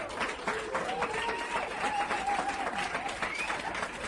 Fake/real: real